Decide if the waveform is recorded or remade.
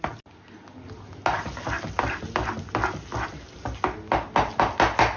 recorded